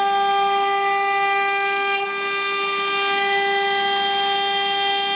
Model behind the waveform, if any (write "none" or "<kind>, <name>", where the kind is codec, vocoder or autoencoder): none